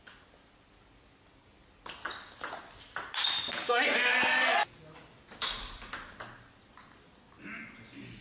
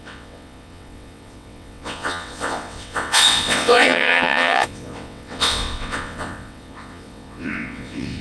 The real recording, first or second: first